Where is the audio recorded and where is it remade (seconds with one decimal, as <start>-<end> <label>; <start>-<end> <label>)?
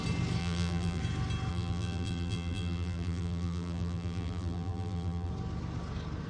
0.0-0.4 recorded; 0.4-1.0 remade; 1.0-1.5 recorded; 1.5-5.3 remade; 5.3-6.3 recorded